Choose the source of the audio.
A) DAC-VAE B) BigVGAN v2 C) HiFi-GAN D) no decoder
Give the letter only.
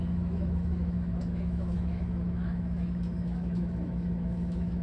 A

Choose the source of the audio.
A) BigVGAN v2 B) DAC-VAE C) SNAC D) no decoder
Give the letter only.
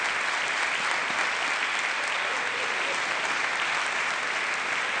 D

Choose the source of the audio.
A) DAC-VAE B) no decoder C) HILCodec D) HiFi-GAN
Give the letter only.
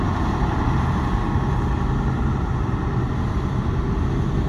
B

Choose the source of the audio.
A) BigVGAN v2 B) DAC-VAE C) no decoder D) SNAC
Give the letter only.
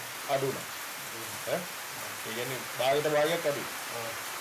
C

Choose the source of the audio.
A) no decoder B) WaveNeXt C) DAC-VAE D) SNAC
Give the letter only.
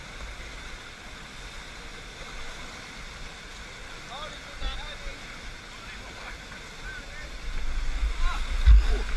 A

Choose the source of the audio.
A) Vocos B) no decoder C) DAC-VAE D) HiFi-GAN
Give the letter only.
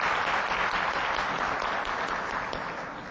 B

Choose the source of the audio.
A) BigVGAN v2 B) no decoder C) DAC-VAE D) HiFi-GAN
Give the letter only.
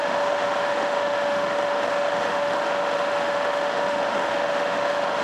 C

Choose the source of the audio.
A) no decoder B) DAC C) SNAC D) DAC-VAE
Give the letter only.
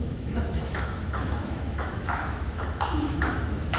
D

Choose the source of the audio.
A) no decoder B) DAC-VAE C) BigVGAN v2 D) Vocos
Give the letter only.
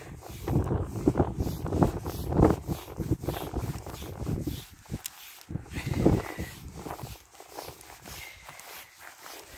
A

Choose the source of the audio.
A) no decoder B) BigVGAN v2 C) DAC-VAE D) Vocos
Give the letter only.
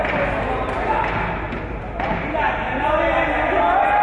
A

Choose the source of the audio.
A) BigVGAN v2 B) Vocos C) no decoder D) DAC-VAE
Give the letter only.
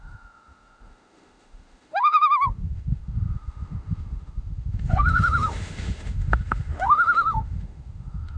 D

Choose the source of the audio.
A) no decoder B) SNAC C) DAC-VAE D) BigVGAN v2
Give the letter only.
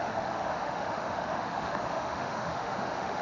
C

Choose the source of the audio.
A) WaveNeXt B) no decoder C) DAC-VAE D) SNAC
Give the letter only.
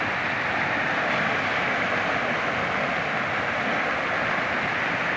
B